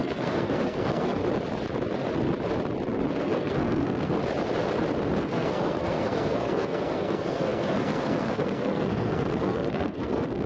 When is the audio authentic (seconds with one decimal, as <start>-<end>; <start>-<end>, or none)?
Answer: 1.2-3.1; 4.2-5.2

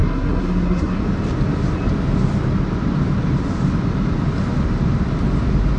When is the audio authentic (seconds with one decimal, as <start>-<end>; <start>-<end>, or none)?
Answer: 1.0-5.8

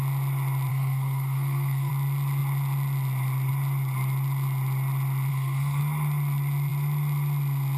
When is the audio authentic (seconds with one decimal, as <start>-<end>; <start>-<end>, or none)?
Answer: 0.0-0.7; 1.9-5.3; 5.8-7.8

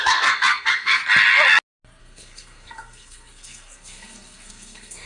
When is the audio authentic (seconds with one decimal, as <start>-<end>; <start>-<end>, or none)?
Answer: 1.0-2.0

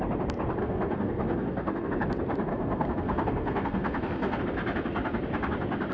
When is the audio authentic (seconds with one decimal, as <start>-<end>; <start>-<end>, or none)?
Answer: 0.0-0.6; 1.9-2.5; 4.4-5.9

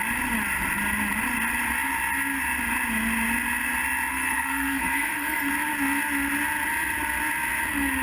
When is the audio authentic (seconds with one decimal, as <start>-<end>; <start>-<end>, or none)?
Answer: 0.0-4.1; 5.5-8.0

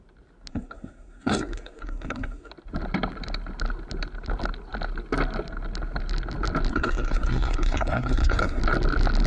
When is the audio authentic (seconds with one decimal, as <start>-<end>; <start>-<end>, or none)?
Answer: 0.0-0.5; 2.5-6.7; 8.6-9.3